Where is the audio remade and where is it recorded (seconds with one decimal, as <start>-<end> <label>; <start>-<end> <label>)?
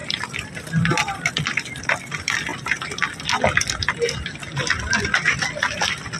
0.0-1.4 remade; 1.4-6.2 recorded